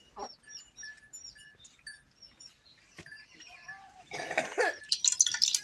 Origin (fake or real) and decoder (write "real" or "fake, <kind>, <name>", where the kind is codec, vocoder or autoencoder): real